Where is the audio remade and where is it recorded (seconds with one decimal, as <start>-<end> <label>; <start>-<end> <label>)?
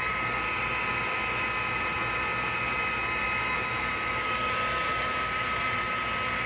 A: 0.0-6.5 recorded